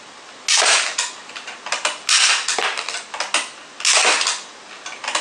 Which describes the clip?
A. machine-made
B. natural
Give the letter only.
B